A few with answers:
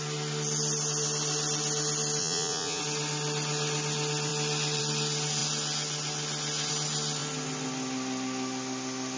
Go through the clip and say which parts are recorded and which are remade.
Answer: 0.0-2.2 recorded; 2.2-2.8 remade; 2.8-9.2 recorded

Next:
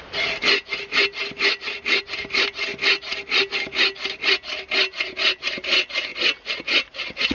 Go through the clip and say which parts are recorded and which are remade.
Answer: 0.0-1.2 recorded; 1.2-2.0 remade; 2.0-6.1 recorded; 6.1-6.6 remade; 6.6-7.3 recorded

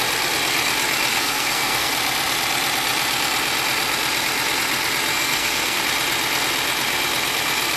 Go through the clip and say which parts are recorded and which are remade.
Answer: 0.0-1.1 recorded; 1.1-1.9 remade; 1.9-5.1 recorded; 5.1-5.8 remade; 5.8-7.8 recorded

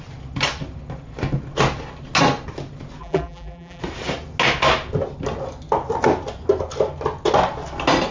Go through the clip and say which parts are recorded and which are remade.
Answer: 0.0-3.0 recorded; 3.0-3.8 remade; 3.8-8.1 recorded